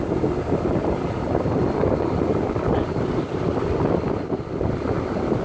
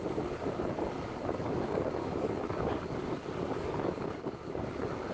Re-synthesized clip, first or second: second